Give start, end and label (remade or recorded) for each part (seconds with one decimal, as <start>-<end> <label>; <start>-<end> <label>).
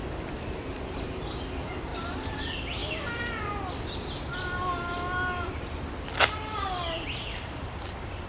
0.0-1.9 remade; 1.9-2.4 recorded; 2.4-8.3 remade